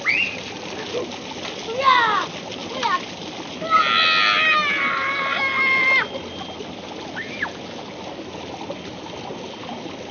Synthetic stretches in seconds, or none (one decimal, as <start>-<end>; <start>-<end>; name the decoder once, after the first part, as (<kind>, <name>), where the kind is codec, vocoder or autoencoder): none